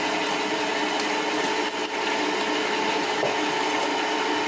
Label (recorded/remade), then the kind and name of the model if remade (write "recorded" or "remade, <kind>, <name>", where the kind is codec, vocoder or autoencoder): recorded